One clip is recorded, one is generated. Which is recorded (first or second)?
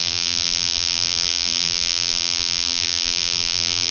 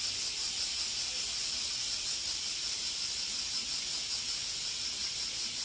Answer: second